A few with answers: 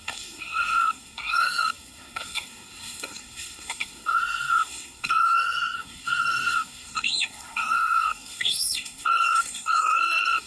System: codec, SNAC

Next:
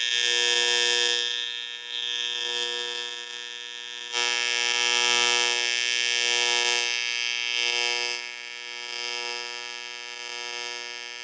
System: none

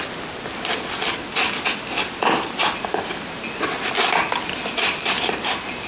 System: none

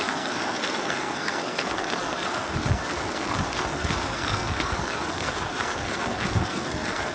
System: codec, SNAC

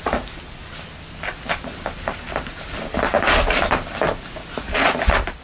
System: none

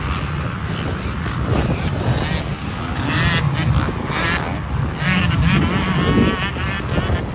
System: none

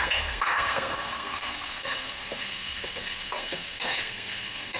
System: codec, SNAC